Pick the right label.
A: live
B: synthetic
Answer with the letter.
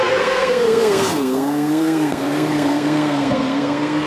B